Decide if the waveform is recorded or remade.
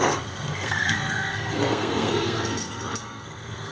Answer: remade